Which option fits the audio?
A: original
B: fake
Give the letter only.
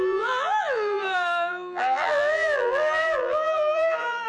B